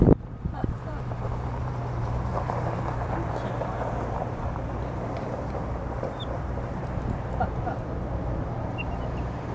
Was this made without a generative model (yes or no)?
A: no